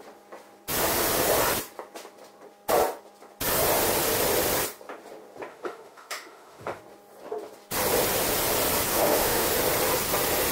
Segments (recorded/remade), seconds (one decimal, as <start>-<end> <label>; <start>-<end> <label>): 0.0-5.5 recorded; 5.5-6.8 remade; 6.8-8.9 recorded; 8.9-9.5 remade; 9.5-10.5 recorded